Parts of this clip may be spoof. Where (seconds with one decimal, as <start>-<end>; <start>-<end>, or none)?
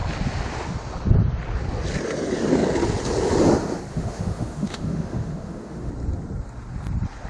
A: 3.9-5.9